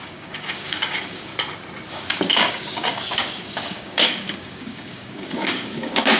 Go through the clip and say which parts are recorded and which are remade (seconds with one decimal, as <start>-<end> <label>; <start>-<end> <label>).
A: 0.0-1.3 remade; 1.3-1.9 recorded; 1.9-6.2 remade